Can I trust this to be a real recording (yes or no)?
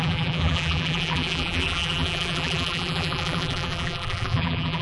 no